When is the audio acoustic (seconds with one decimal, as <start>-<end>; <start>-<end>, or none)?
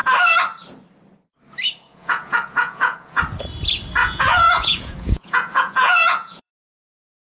0.0-1.9; 3.2-4.0; 6.5-7.3